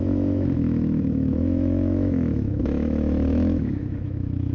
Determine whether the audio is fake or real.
fake